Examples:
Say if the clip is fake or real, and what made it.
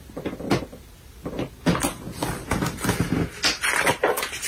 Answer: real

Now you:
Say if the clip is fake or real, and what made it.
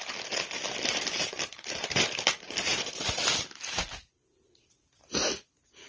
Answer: fake, vocoder, BigVGAN v2